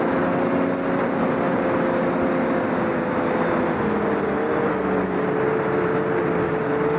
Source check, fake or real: real